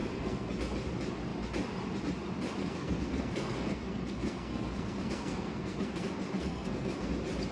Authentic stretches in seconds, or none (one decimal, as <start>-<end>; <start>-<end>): 0.5-2.6; 7.1-7.5